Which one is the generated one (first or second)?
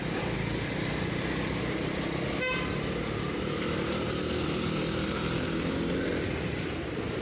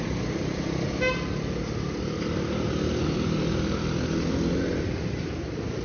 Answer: second